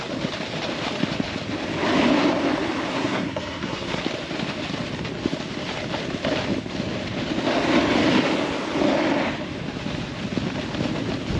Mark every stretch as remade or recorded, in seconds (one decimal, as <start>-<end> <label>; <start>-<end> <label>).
0.0-2.9 recorded; 2.9-4.0 remade; 4.0-11.4 recorded